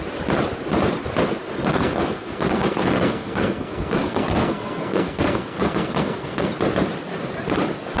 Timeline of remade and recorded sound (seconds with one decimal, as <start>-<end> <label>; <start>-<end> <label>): 0.0-1.7 recorded; 1.7-6.5 remade; 6.5-8.0 recorded